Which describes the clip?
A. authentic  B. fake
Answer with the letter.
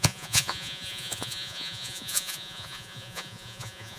B